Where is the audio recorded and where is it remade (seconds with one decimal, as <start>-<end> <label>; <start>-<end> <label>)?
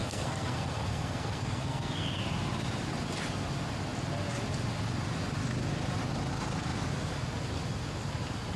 0.0-2.2 remade; 2.2-8.6 recorded